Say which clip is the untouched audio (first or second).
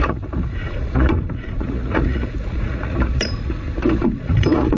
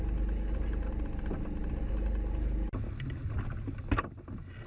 second